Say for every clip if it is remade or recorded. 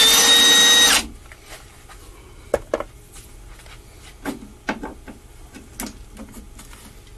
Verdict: recorded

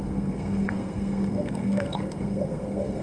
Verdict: remade